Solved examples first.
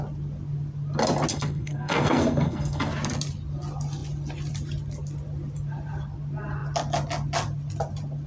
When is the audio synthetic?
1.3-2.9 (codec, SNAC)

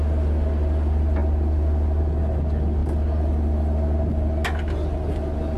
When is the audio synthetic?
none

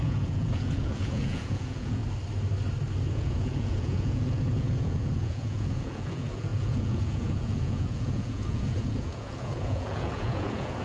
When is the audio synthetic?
0.0-2.0 (vocoder, Vocos); 3.1-10.8